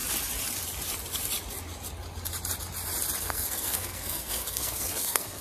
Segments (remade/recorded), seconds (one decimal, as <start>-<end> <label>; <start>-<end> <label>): 0.0-3.2 recorded; 3.2-5.4 remade